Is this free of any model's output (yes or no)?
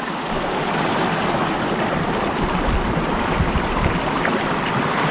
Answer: no